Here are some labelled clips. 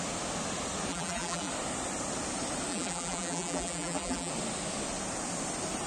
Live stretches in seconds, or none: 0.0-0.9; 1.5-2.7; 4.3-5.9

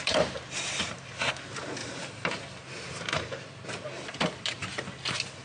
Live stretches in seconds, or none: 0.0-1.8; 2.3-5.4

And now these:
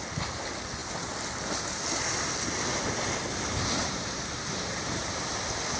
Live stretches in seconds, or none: 0.0-3.8; 5.3-5.8

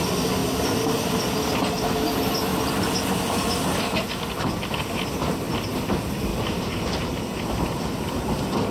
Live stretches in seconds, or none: 0.0-6.3; 7.2-8.7

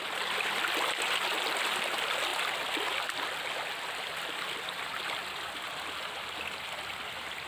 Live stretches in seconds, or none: 0.0-7.5

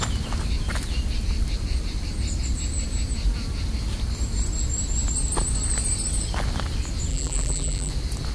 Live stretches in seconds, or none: 0.0-7.1; 7.9-8.3

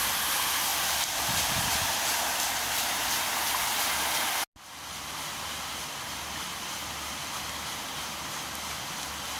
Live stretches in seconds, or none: 0.0-9.4